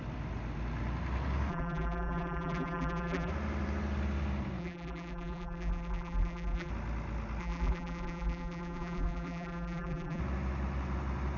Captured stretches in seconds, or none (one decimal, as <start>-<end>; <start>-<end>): 0.0-1.5; 3.3-4.6; 6.7-7.4; 10.2-11.4